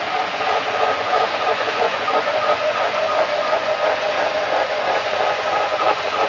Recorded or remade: remade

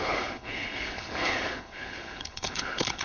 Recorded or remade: remade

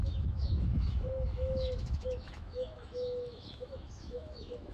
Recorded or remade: remade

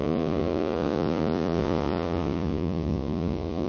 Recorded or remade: remade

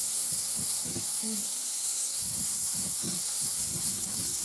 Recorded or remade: remade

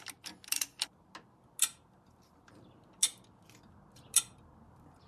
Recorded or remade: recorded